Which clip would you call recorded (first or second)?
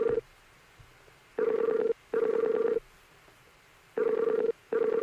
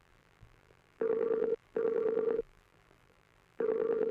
first